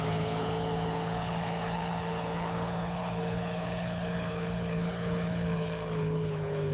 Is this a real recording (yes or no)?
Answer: no